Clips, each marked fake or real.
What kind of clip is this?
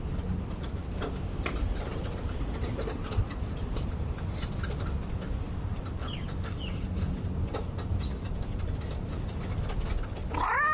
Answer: real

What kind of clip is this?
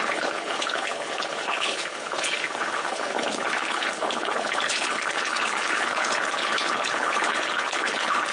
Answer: fake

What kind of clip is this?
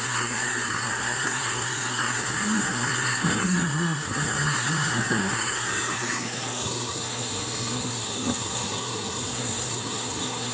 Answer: fake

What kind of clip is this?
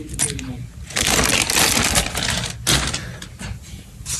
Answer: real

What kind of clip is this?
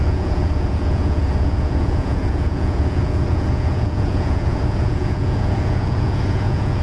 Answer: fake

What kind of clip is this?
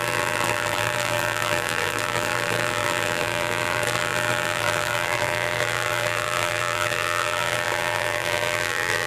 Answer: fake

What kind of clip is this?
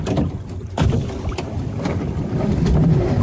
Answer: fake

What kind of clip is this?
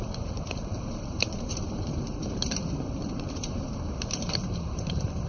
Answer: fake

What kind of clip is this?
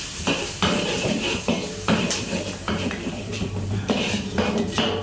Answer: fake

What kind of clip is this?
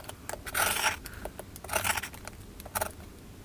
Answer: real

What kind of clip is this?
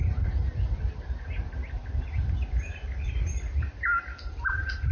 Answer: real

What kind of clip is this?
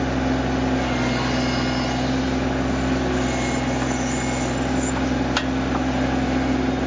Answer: real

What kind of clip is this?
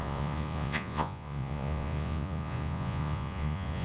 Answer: fake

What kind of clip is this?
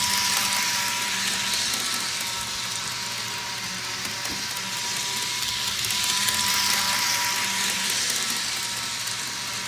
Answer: real